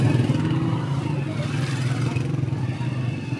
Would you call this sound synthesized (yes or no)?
no